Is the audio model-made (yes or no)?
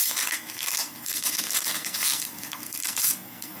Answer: yes